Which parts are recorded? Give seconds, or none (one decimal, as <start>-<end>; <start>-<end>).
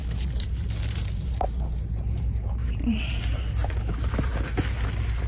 3.2-3.6; 4.7-5.3